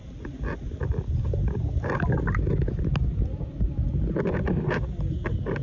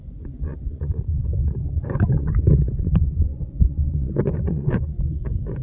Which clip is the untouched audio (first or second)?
first